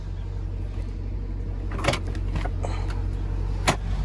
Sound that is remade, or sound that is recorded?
recorded